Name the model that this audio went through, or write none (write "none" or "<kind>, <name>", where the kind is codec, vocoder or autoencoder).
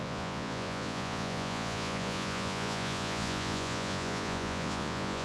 vocoder, Vocos